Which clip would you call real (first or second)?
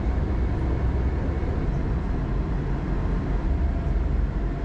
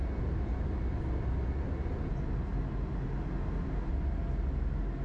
second